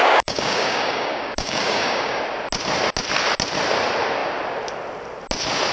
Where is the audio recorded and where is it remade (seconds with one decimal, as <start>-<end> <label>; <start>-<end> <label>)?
0.0-2.2 remade; 2.2-5.7 recorded